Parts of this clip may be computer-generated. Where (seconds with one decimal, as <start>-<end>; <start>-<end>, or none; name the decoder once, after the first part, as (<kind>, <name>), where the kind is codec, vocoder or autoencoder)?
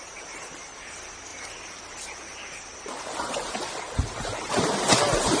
none